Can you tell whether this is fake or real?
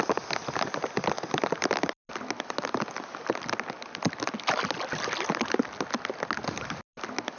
real